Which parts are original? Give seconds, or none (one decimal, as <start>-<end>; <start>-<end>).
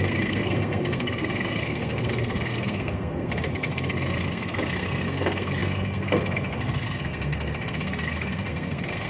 none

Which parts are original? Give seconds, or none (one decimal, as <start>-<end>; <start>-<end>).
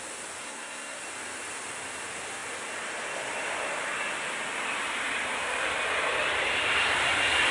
0.0-0.4; 1.0-7.5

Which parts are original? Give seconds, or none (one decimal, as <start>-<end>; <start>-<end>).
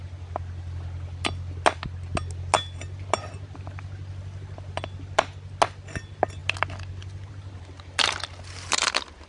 0.0-9.3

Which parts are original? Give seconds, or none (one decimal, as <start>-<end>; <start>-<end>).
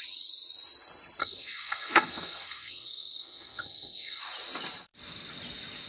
0.0-1.2; 4.2-5.9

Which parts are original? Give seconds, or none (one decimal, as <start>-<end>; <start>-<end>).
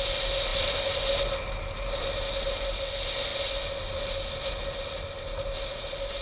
0.0-6.2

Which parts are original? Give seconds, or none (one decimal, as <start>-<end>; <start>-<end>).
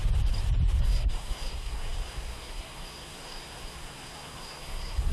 0.0-0.8